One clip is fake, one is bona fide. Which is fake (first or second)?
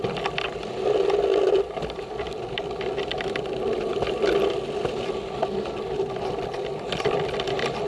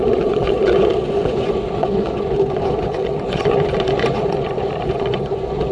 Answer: second